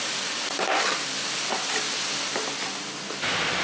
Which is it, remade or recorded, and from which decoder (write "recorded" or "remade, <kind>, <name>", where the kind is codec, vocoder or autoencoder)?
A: recorded